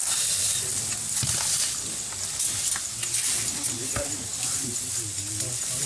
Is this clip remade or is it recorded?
recorded